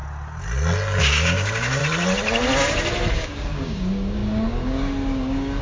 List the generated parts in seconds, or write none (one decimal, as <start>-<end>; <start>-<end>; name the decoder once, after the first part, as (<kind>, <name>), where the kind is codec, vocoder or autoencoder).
1.0-1.8 (codec, DAC); 3.1-5.6